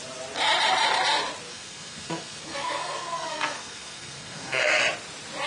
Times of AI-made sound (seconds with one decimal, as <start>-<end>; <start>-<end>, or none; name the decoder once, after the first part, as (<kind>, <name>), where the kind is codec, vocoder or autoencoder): 1.5-4.8 (codec, SNAC)